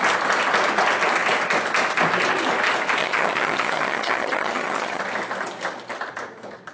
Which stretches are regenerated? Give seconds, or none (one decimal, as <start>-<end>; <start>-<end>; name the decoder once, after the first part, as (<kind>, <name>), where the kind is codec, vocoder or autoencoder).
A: 3.0-5.0 (vocoder, HiFi-GAN)